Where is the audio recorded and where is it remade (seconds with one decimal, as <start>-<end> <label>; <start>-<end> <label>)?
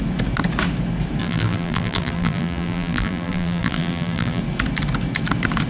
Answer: 0.0-1.2 recorded; 1.2-4.4 remade; 4.4-5.7 recorded